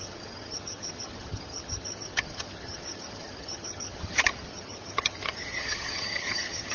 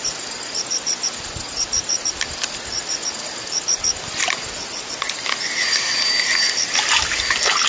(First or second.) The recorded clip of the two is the second